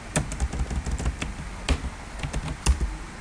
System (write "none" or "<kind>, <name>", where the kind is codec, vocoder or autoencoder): none